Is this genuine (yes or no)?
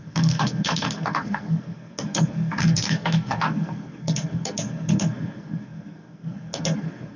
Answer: no